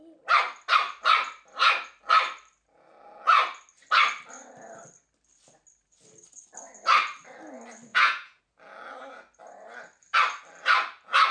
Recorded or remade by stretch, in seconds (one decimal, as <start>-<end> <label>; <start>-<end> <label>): 0.0-7.9 recorded; 7.9-8.4 remade; 8.4-11.3 recorded